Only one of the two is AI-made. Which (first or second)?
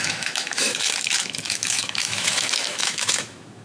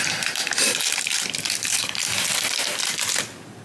first